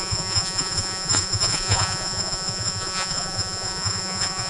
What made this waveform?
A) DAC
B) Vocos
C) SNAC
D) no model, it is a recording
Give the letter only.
B